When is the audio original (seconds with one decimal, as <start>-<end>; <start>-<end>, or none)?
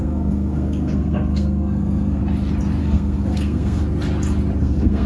2.2-2.8; 3.8-4.6